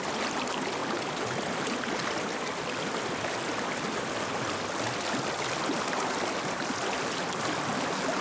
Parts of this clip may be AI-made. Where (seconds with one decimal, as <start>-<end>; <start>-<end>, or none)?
none